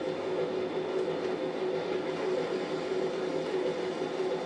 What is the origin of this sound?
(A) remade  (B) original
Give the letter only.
B